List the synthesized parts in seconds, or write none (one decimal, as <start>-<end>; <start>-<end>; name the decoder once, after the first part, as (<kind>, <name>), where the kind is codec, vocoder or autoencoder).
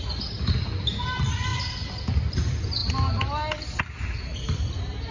none